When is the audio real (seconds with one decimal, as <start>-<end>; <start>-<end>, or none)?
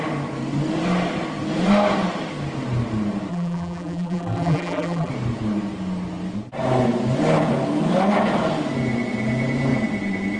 0.0-3.3; 5.1-10.4